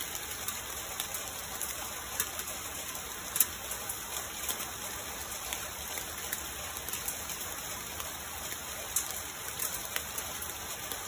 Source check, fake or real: real